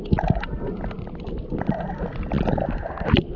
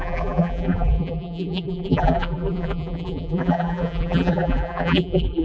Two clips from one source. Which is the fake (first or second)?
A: second